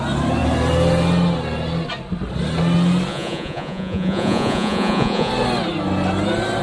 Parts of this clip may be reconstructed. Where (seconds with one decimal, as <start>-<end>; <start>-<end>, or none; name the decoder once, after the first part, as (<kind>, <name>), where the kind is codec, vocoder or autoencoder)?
3.1-5.3 (vocoder, Vocos)